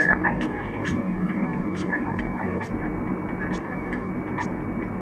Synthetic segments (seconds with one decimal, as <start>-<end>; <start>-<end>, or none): 0.0-2.7; 3.6-4.1